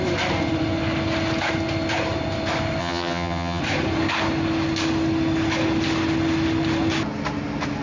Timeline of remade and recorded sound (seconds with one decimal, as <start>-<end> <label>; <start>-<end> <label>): 0.0-2.8 recorded; 2.8-3.6 remade; 3.6-7.8 recorded